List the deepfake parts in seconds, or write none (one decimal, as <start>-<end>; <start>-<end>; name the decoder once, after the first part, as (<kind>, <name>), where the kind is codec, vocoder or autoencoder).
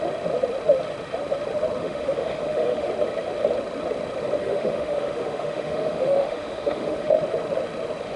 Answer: 1.8-2.9 (autoencoder, DAC-VAE); 4.4-7.2